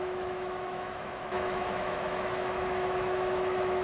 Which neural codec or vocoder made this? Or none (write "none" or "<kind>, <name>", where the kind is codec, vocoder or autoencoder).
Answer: autoencoder, DAC-VAE